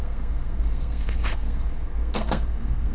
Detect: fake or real fake